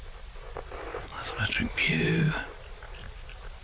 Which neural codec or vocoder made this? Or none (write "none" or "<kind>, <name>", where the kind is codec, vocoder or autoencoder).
vocoder, BigVGAN v2